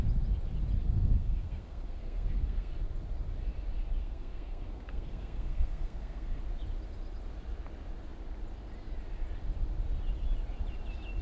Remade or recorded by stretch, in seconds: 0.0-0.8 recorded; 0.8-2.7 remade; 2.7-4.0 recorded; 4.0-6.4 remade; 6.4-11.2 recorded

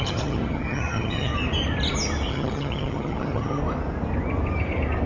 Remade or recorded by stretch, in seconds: 0.0-1.3 remade; 1.3-2.3 recorded; 2.3-3.6 remade; 3.6-5.1 recorded

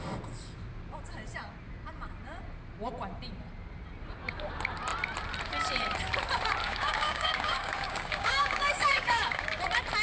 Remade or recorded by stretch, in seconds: 0.0-6.6 recorded; 6.6-9.6 remade; 9.6-10.0 recorded

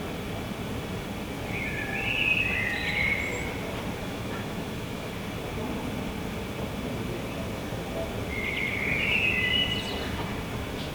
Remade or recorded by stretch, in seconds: 0.0-4.0 recorded; 4.0-5.1 remade; 5.1-10.9 recorded

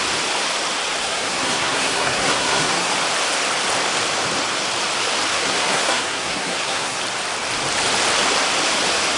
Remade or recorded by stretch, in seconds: 0.0-1.0 recorded; 1.0-2.9 remade; 2.9-5.3 recorded; 5.3-7.0 remade; 7.0-9.2 recorded

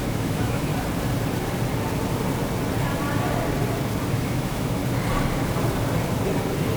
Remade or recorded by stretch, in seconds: 0.0-0.7 remade; 0.7-4.1 recorded; 4.1-4.8 remade; 4.8-6.8 recorded